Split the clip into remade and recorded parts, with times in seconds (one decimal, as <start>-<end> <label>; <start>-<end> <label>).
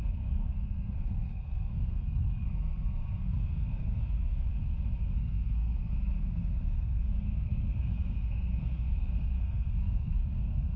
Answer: 0.0-4.5 remade; 4.5-5.0 recorded; 5.0-10.8 remade